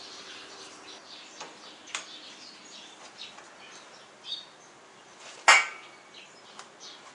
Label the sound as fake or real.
real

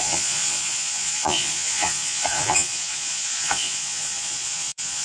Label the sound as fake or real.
fake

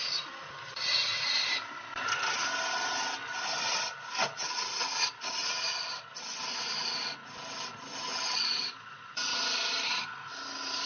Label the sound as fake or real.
real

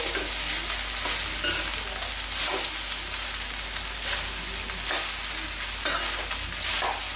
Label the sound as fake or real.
real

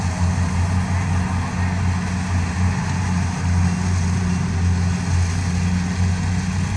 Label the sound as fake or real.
real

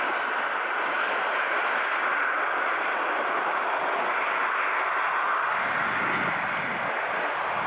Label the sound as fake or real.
real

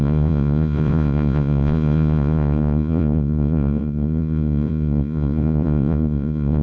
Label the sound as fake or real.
fake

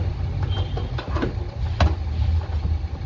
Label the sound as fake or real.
real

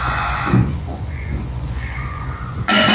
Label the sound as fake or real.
fake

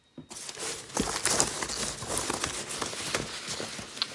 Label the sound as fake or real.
real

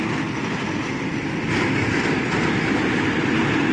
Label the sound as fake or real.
real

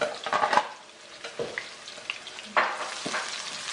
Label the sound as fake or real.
real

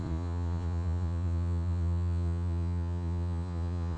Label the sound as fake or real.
fake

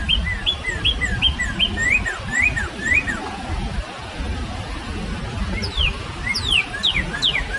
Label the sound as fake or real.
real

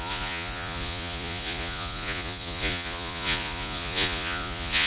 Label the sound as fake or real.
fake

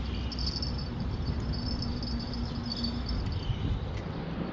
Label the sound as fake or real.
real